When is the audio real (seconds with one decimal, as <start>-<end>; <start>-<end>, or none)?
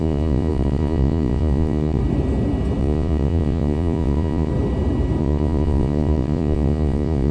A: 2.0-2.8; 4.5-5.2